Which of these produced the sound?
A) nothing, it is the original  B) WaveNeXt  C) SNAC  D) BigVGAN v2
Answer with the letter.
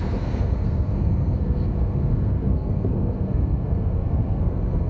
C